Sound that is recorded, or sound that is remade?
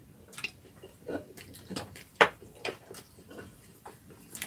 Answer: remade